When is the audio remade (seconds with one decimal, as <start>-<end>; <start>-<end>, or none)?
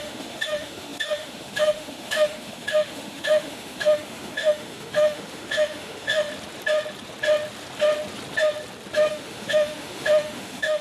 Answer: 0.0-6.3; 9.1-10.8